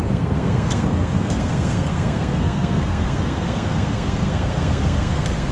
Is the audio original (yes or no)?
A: no